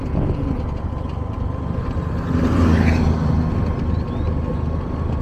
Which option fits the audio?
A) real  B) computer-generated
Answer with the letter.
A